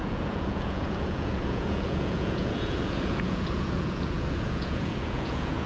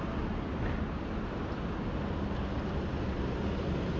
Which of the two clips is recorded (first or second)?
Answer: second